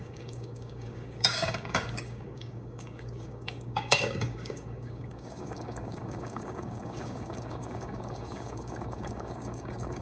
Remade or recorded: remade